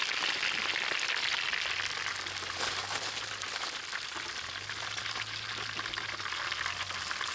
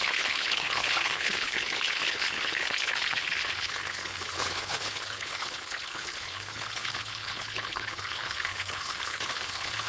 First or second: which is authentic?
first